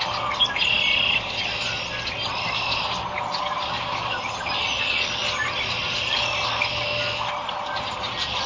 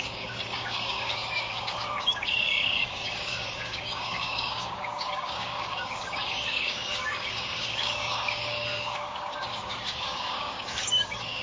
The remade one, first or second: second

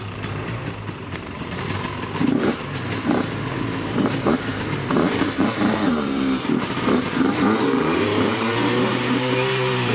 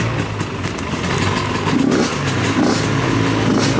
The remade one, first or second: first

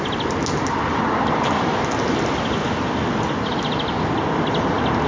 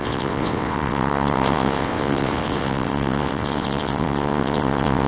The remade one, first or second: second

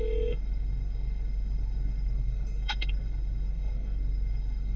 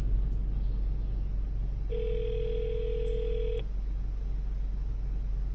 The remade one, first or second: first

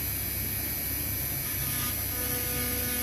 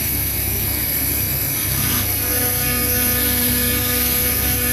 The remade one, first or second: second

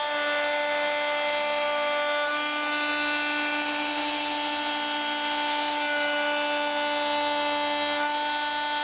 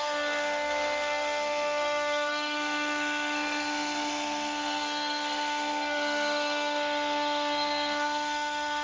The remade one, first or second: second